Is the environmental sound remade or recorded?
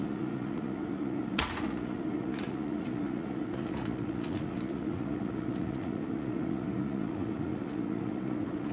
remade